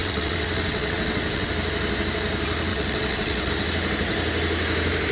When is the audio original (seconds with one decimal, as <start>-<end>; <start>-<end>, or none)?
1.5-2.7; 3.5-5.1